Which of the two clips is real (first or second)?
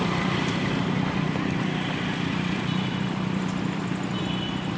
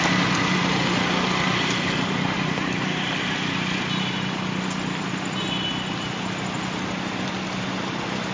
second